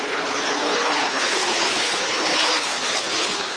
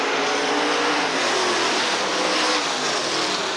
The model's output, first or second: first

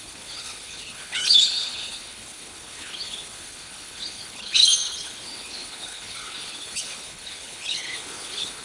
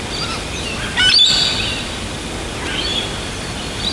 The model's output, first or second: first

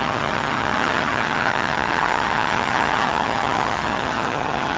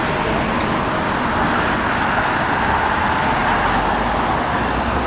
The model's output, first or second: first